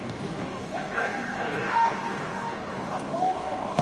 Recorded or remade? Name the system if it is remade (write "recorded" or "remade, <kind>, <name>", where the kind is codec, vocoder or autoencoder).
remade, codec, DAC